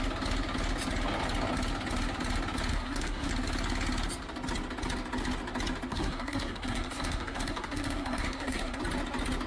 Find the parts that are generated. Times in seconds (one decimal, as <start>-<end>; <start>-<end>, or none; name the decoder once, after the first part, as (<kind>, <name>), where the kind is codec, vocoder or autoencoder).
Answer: 2.7-3.3 (codec, SNAC); 5.9-8.8